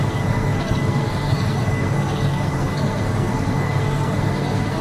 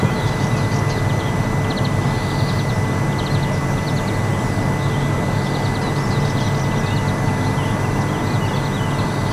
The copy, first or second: first